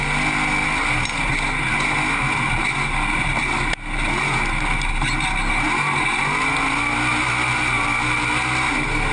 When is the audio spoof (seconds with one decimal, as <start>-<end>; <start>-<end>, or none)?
none